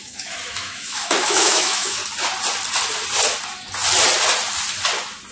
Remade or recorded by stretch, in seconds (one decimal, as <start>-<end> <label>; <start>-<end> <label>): 0.0-2.0 remade; 2.0-5.3 recorded

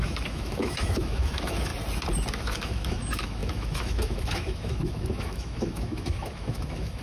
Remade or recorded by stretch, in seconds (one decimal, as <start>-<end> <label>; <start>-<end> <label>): 0.0-1.7 remade; 1.7-2.3 recorded; 2.3-7.0 remade

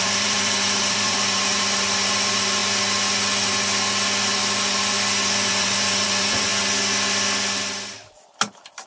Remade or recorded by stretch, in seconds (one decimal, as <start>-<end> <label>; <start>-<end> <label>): 0.0-2.6 remade; 2.6-5.5 recorded; 5.5-6.5 remade; 6.5-8.5 recorded; 8.5-8.9 remade

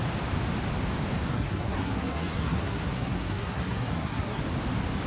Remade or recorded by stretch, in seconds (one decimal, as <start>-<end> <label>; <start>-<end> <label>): 0.0-1.3 recorded; 1.3-4.4 remade; 4.4-5.1 recorded

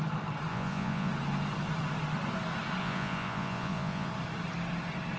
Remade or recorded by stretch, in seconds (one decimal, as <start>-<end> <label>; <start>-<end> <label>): 0.0-0.5 recorded; 0.5-1.1 remade; 1.1-2.8 recorded; 2.8-4.1 remade; 4.1-5.2 recorded

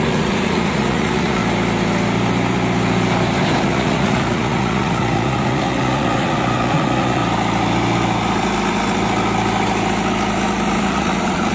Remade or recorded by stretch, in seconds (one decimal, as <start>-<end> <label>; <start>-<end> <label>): 0.0-1.4 remade; 1.4-3.6 recorded; 3.6-7.2 remade; 7.2-10.8 recorded; 10.8-11.5 remade

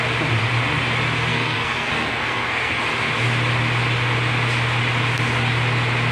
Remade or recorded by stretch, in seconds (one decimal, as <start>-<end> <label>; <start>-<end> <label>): 0.0-1.3 recorded; 1.3-2.8 remade; 2.8-6.1 recorded

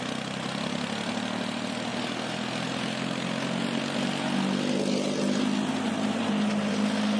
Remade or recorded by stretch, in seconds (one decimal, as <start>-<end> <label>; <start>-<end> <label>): 0.0-7.2 recorded